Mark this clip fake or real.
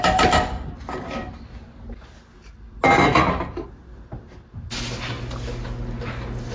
real